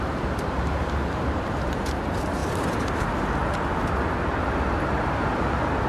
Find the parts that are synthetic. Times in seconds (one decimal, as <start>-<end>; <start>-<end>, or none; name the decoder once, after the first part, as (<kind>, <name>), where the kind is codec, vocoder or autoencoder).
0.0-3.4 (vocoder, BigVGAN v2); 4.4-5.9